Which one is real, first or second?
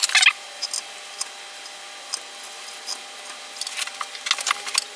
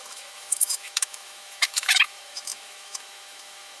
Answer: first